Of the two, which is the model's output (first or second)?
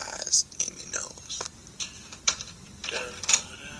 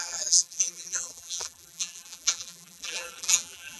second